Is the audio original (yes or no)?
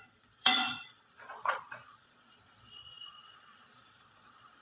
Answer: no